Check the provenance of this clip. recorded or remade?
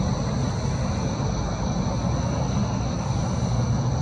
recorded